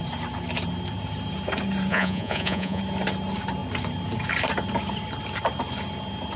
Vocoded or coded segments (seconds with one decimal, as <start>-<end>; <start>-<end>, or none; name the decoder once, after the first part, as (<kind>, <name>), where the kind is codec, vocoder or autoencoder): 1.9-2.8 (vocoder, Vocos)